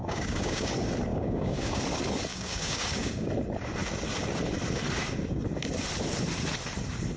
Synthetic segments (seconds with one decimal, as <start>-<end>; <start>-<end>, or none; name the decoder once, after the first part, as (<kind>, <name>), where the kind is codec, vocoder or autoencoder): 0.0-0.7 (codec, DAC); 1.1-1.8; 2.3-3.3